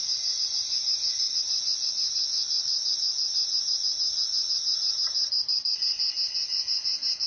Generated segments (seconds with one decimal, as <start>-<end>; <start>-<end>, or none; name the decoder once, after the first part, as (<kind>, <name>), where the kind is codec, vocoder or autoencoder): none